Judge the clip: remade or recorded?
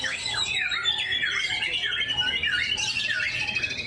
remade